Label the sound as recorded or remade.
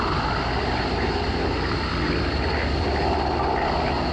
recorded